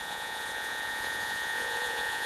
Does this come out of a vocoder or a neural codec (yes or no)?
yes